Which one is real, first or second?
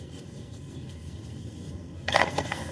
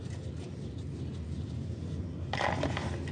second